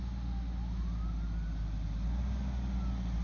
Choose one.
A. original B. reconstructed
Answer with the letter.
A